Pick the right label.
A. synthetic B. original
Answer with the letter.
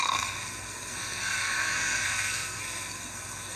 A